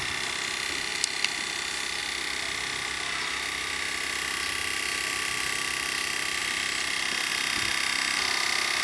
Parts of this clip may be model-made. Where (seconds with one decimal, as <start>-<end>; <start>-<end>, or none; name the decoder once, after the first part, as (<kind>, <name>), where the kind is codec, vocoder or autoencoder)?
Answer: none